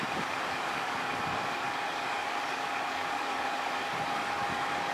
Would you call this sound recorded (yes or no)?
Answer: no